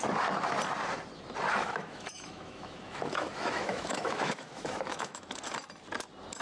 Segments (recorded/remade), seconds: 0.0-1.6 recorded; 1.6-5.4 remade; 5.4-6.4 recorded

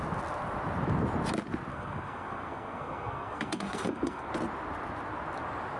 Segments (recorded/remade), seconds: 0.0-1.7 recorded; 1.7-4.3 remade; 4.3-5.8 recorded

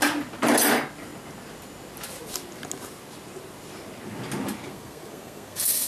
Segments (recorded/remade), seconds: 0.0-4.7 recorded; 4.7-5.9 remade

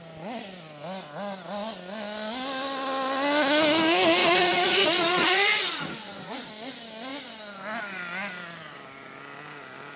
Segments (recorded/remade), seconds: 0.0-4.2 recorded; 4.2-6.5 remade; 6.5-10.0 recorded